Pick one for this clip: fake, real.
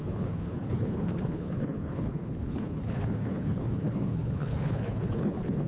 fake